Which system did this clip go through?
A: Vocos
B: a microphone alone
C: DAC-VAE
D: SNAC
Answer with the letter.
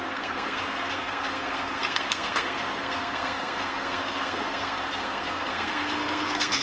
D